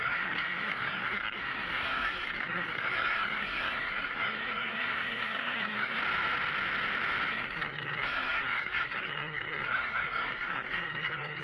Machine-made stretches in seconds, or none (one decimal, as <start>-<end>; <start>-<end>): 0.0-6.0; 7.3-11.4